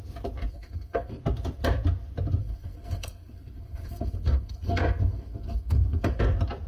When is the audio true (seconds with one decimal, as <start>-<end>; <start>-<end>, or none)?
0.0-0.5; 1.2-2.4; 6.2-6.7